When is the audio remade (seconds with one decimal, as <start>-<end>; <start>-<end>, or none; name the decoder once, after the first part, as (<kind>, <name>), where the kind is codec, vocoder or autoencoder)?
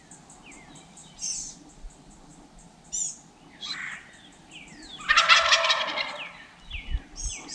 none